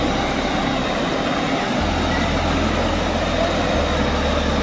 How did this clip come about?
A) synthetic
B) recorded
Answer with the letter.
B